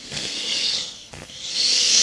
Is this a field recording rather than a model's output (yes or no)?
no